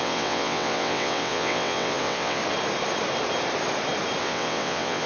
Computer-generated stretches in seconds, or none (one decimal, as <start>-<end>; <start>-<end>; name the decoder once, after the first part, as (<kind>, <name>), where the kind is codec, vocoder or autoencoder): 0.0-2.4 (vocoder, WaveNeXt); 4.2-5.1